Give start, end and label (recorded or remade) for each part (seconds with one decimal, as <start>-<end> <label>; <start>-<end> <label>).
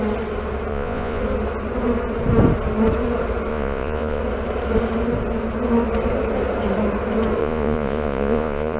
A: 0.0-0.7 recorded; 0.7-1.2 remade; 1.2-3.5 recorded; 3.5-4.2 remade; 4.2-7.4 recorded; 7.4-8.8 remade